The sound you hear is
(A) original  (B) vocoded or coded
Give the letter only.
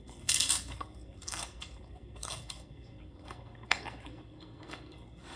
B